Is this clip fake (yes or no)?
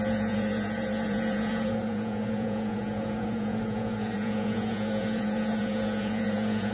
yes